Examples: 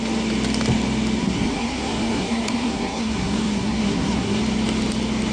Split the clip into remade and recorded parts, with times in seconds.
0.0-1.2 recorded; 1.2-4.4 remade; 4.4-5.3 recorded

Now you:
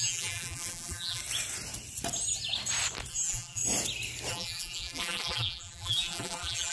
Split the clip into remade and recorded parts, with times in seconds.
0.0-1.2 remade; 1.2-3.1 recorded; 3.1-3.6 remade; 3.6-4.3 recorded; 4.3-6.7 remade

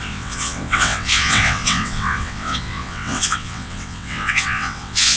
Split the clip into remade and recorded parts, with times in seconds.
0.0-5.2 remade

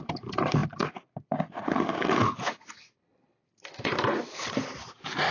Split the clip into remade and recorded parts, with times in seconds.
0.0-5.3 remade

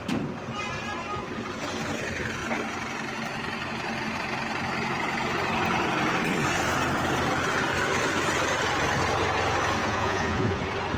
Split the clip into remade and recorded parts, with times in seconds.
0.0-9.8 recorded; 9.8-10.6 remade; 10.6-11.0 recorded

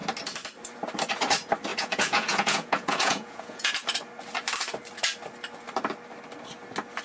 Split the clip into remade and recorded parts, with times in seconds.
0.0-1.7 recorded; 1.7-3.7 remade; 3.7-7.0 recorded

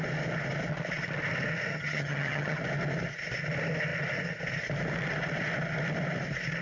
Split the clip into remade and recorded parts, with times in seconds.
0.0-1.7 recorded; 1.7-2.6 remade; 2.6-6.6 recorded

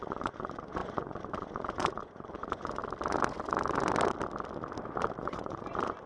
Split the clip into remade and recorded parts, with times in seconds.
0.0-2.8 remade; 2.8-5.2 recorded; 5.2-6.1 remade